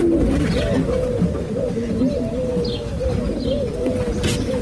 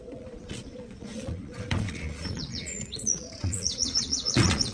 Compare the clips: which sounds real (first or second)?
first